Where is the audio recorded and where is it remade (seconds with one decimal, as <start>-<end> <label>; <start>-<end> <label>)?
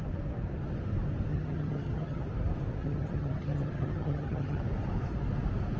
0.0-1.3 recorded; 1.3-2.2 remade; 2.2-2.8 recorded; 2.8-4.6 remade; 4.6-5.8 recorded